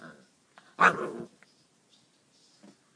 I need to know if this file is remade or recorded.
recorded